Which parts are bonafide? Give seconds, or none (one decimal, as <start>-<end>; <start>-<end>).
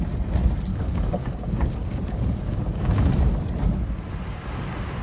0.0-0.7; 3.1-5.0